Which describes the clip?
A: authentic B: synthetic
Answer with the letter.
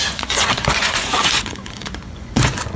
B